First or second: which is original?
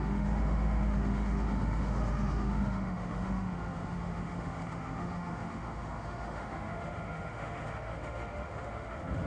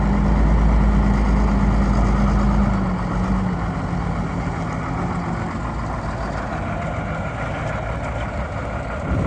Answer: second